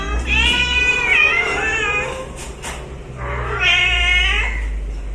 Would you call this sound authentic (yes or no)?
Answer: yes